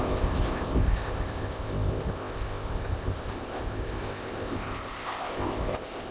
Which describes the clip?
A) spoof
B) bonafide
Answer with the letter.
A